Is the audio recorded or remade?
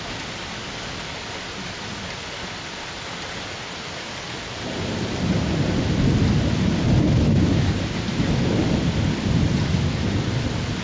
recorded